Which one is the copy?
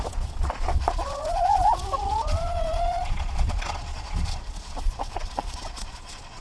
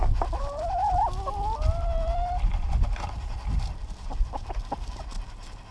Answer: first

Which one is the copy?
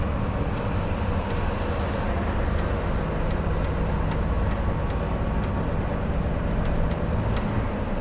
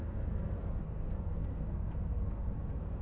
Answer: second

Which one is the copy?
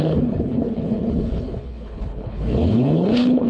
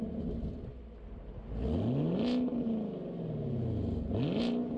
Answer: first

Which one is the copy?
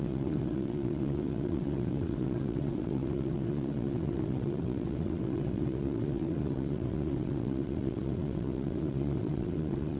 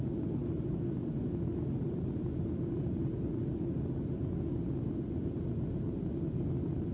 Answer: first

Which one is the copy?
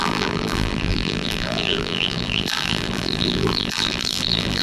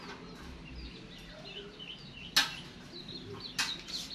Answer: first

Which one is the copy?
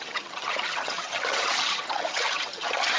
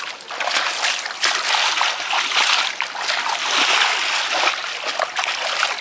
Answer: first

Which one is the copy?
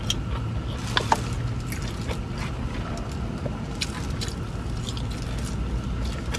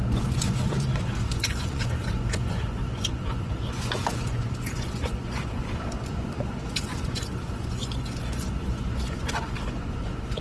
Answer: second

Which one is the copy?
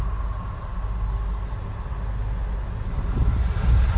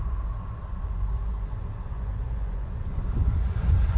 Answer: second